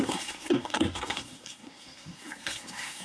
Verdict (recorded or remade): remade